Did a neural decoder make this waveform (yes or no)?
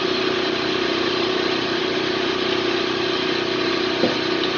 no